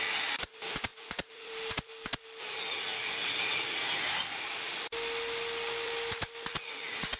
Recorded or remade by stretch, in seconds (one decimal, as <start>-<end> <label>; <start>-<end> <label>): 0.0-7.2 recorded